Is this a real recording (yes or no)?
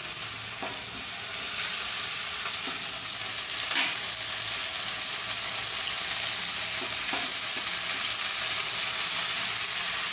yes